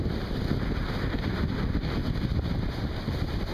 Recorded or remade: recorded